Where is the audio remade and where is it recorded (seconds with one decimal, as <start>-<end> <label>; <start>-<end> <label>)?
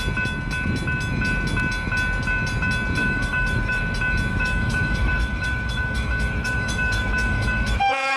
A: 0.0-3.0 recorded; 3.0-3.8 remade; 3.8-4.3 recorded; 4.3-8.2 remade